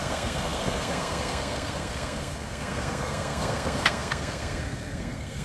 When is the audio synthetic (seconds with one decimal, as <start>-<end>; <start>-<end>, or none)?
0.0-5.4